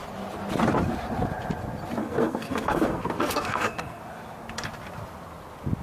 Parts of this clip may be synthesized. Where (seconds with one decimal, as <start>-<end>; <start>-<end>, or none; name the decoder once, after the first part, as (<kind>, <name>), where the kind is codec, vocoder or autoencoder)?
2.0-4.0 (codec, SNAC)